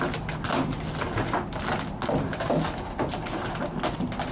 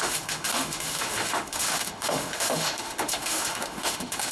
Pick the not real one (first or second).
second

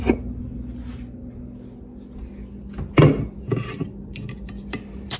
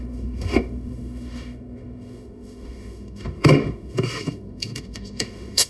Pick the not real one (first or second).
second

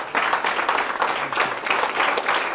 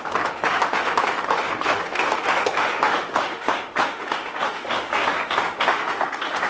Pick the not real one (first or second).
second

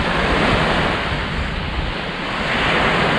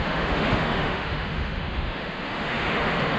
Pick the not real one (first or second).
second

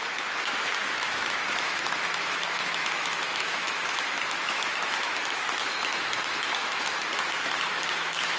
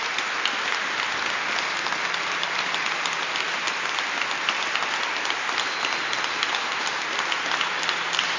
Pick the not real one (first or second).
first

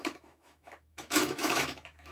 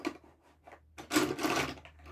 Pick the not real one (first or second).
first